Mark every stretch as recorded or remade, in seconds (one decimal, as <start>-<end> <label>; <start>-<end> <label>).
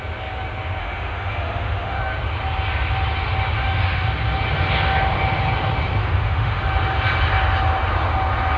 0.0-0.8 recorded; 0.8-2.0 remade; 2.0-3.6 recorded; 3.6-4.1 remade; 4.1-6.0 recorded; 6.0-6.6 remade; 6.6-8.6 recorded